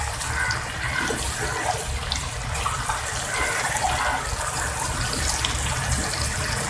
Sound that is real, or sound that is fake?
real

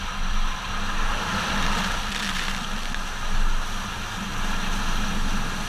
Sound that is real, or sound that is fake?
real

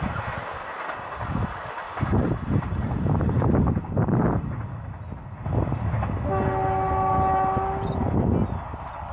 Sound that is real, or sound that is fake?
real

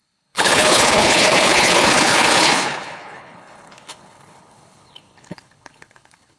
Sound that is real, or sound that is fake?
fake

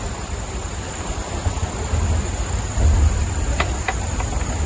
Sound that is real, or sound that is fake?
real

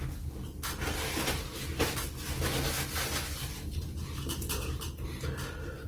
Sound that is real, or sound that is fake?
real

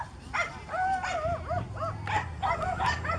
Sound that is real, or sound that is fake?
real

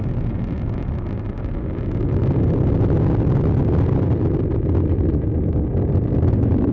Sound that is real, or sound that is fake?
real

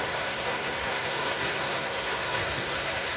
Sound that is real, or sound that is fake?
fake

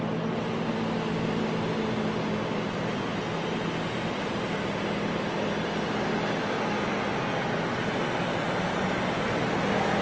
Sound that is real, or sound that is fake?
real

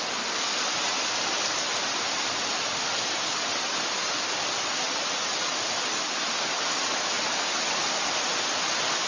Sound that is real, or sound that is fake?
real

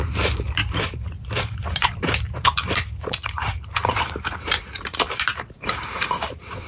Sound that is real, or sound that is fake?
fake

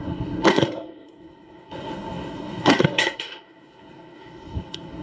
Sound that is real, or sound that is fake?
fake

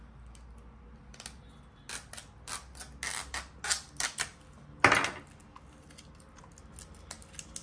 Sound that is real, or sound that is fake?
real